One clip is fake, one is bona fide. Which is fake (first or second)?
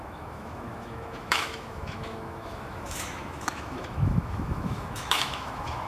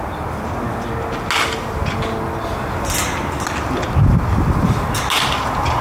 first